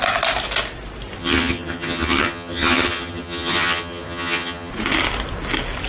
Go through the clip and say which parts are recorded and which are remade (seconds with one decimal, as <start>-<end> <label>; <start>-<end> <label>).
0.0-1.2 recorded; 1.2-4.7 remade; 4.7-5.9 recorded